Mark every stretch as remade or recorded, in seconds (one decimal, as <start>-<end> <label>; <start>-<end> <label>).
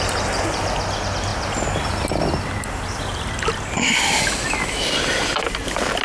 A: 0.0-6.0 recorded